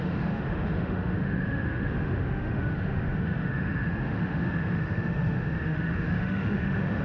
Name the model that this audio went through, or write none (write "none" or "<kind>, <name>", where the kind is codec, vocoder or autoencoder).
autoencoder, DAC-VAE